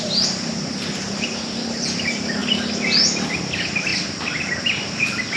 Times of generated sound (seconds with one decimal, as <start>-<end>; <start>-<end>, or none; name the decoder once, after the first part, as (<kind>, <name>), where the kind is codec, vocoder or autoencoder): 0.0-2.4 (vocoder, BigVGAN v2); 3.4-5.4